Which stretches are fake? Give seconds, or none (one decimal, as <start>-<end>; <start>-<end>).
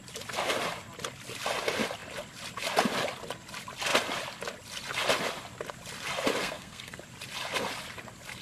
6.4-7.0